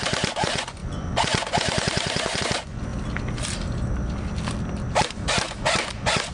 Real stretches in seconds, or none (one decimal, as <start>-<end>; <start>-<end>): 2.9-5.1